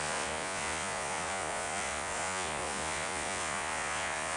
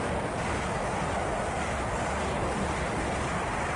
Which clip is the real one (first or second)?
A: second